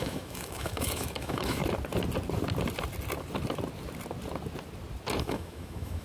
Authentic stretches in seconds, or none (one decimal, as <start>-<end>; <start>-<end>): 1.6-5.2

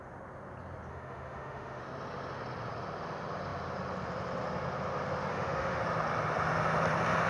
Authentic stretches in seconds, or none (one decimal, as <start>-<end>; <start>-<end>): 0.0-0.9; 1.8-5.3; 5.8-7.3

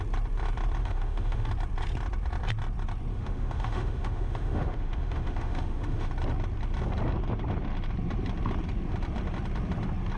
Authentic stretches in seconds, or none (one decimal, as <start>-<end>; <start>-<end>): 0.0-0.8; 1.5-3.1; 6.1-10.2

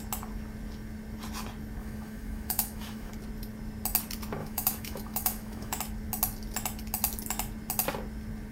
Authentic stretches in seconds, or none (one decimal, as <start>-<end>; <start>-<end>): 0.0-1.8; 3.1-4.4; 5.8-8.5